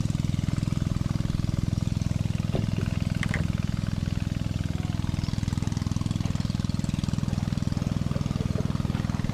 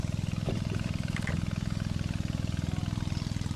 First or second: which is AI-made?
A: second